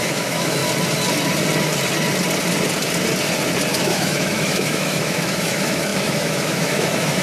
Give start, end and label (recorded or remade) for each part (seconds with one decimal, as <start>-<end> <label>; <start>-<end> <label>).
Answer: 0.0-0.6 remade; 0.6-3.7 recorded; 3.7-7.2 remade